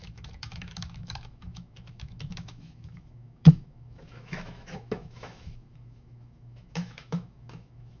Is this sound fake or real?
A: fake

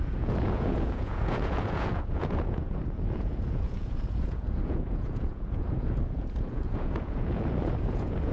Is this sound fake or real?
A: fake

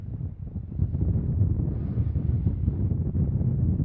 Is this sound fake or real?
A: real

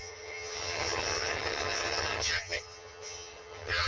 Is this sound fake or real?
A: fake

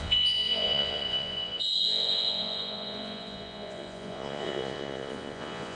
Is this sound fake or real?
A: fake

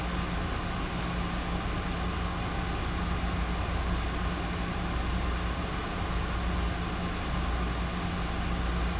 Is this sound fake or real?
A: real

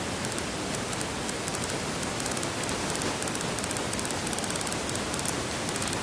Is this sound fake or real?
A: fake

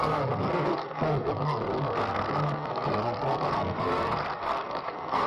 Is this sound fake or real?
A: fake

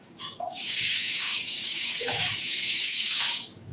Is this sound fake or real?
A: fake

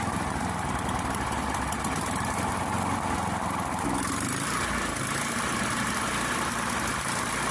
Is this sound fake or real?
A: real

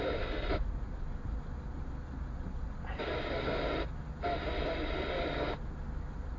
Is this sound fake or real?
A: real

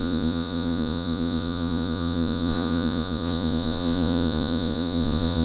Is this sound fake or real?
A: fake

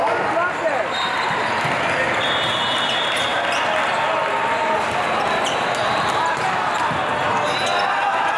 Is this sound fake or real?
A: real